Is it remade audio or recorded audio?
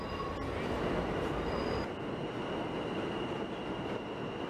recorded